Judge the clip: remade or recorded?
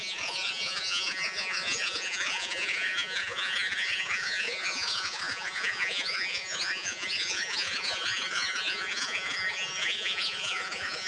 remade